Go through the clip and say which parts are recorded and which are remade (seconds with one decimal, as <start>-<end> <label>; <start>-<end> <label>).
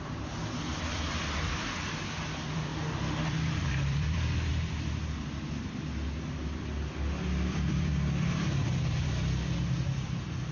0.0-2.7 remade; 2.7-3.3 recorded; 3.3-4.5 remade; 4.5-7.5 recorded; 7.5-10.5 remade